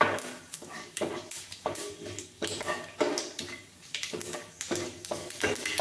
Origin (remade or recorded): remade